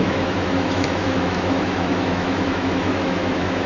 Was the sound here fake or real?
fake